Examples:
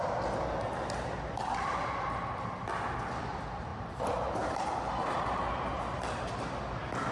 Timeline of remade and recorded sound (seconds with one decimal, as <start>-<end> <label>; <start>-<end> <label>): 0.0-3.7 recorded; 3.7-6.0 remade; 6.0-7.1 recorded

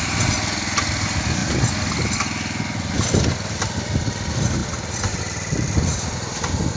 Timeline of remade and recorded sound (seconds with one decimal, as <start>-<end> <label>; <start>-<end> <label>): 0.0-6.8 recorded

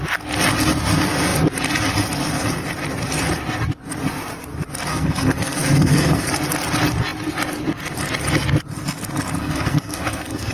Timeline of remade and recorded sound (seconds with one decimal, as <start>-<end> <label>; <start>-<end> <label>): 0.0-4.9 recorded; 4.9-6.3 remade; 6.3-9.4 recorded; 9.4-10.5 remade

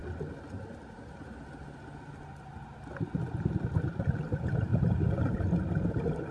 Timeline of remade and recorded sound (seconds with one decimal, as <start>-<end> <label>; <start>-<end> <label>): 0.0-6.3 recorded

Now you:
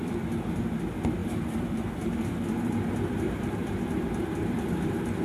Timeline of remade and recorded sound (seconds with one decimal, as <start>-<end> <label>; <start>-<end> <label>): 0.0-5.2 remade

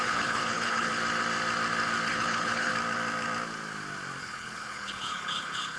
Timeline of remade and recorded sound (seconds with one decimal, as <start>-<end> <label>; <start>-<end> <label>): 0.0-0.9 remade; 0.9-2.1 recorded; 2.1-2.7 remade; 2.7-4.2 recorded; 4.2-5.8 remade

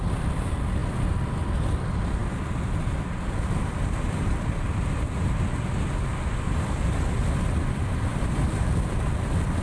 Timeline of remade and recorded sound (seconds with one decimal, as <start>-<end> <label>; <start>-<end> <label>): 0.0-8.1 recorded; 8.1-9.1 remade; 9.1-9.6 recorded